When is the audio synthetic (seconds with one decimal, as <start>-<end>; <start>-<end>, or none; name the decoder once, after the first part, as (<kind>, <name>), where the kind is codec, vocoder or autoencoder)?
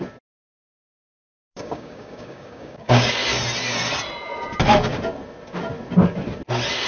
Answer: 1.4-3.1 (codec, DAC)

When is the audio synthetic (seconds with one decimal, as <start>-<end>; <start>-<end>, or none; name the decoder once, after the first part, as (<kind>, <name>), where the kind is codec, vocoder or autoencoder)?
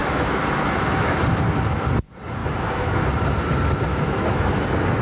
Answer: 0.0-1.2 (autoencoder, DAC-VAE); 2.4-3.0; 3.9-4.5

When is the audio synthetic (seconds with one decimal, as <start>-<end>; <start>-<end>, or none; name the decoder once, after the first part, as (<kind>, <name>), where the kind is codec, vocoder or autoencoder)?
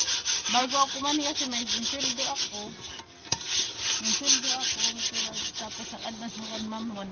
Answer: none